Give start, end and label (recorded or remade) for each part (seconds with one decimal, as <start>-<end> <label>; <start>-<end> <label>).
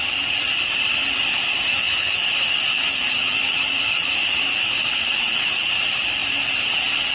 0.0-1.4 recorded; 1.4-5.7 remade; 5.7-7.1 recorded